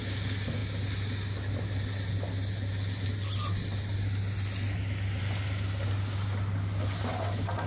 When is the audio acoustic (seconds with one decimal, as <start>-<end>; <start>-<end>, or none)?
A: 0.0-7.7